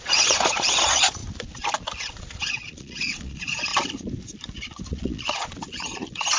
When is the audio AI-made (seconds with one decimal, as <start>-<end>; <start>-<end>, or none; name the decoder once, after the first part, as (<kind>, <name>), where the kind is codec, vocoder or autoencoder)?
0.0-1.2 (vocoder, Vocos); 2.1-3.7; 4.9-6.4